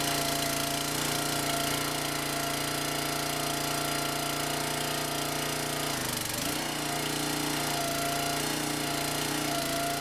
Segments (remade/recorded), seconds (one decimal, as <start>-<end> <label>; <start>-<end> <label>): 0.0-10.0 recorded

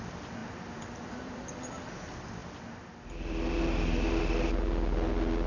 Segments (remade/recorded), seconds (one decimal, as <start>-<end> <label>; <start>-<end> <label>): 0.0-0.4 recorded; 0.4-1.3 remade; 1.3-5.5 recorded

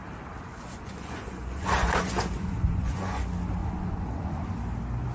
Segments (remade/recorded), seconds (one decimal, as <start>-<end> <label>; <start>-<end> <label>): 0.0-0.5 recorded; 0.5-3.2 remade; 3.2-3.6 recorded; 3.6-4.4 remade; 4.4-5.1 recorded